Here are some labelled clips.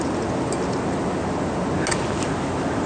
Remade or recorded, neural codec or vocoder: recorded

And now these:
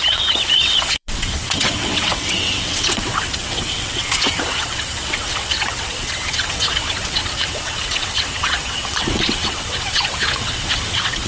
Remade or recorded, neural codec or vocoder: remade, vocoder, WaveNeXt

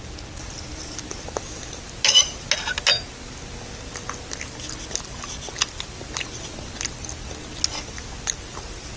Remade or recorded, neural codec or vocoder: recorded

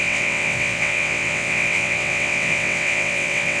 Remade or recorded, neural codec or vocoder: remade, vocoder, WaveNeXt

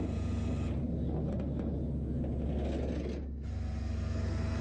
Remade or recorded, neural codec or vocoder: recorded